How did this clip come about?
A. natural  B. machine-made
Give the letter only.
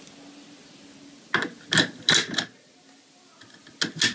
A